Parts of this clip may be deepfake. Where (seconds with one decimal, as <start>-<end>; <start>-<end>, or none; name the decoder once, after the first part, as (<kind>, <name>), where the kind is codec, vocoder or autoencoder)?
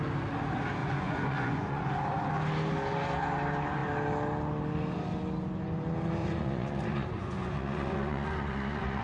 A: 0.8-1.9 (vocoder, Vocos); 6.2-9.0